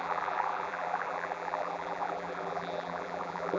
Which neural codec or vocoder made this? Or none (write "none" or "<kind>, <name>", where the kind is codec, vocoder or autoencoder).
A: vocoder, BigVGAN v2